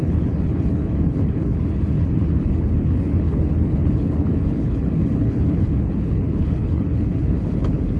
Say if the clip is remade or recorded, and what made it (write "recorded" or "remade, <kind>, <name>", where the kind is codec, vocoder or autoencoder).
remade, codec, HILCodec